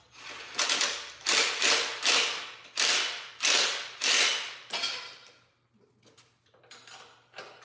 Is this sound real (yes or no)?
yes